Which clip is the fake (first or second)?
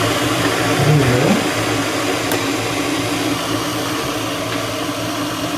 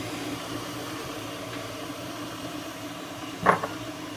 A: second